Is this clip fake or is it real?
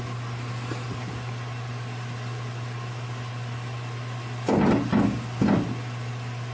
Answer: real